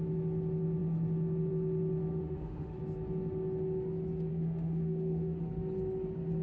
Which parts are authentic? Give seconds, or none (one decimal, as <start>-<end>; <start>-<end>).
0.0-2.1; 2.8-4.3; 5.4-6.4